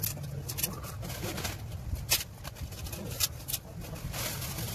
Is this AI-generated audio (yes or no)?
no